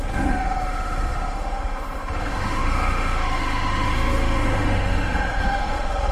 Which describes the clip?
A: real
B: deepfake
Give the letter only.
B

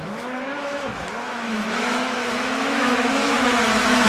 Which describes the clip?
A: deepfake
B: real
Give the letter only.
A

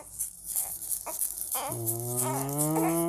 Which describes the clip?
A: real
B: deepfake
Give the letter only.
A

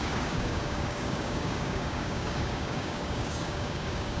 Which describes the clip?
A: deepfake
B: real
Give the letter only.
A